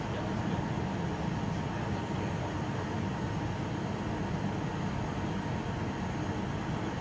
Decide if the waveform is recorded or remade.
recorded